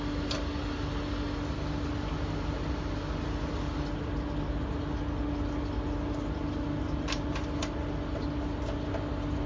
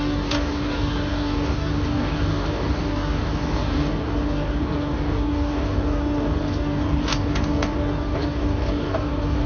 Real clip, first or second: first